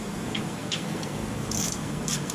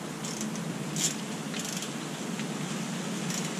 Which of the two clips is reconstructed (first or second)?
first